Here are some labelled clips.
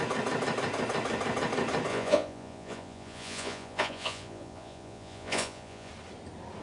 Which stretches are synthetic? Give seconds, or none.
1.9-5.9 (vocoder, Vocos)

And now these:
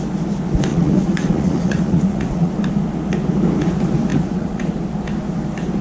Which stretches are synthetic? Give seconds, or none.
0.7-2.5 (vocoder, Vocos); 4.1-4.7

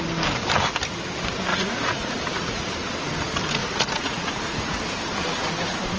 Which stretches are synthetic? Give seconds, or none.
1.5-2.6 (vocoder, Vocos); 3.6-4.8

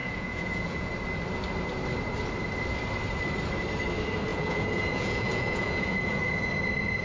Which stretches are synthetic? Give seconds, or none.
0.0-0.9 (vocoder, Vocos); 4.3-6.5

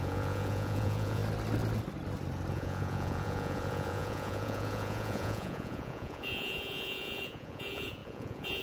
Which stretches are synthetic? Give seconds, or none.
0.0-1.2 (vocoder, Vocos); 2.5-8.6